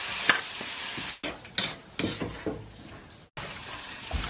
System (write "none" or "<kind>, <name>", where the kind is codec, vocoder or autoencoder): none